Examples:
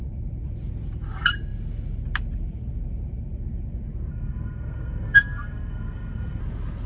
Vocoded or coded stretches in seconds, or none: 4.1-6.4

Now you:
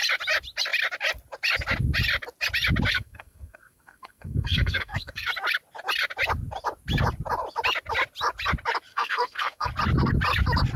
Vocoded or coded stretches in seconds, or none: 2.9-5.3; 8.9-9.7

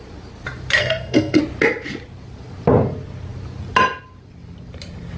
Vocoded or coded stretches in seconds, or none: 0.8-1.4

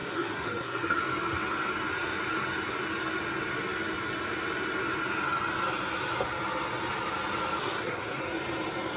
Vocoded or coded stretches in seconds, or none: 0.0-1.0; 7.6-8.2

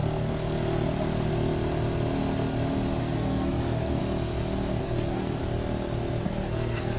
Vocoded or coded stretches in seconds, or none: 3.0-4.0; 4.8-5.4; 6.2-7.0